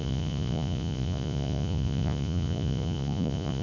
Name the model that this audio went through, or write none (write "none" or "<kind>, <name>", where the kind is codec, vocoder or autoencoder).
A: vocoder, Vocos